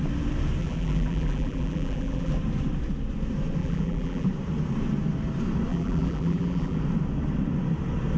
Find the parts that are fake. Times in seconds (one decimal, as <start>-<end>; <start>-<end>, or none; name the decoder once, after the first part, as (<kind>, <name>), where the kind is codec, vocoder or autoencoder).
0.6-2.3 (vocoder, BigVGAN v2); 3.6-4.3; 5.7-6.8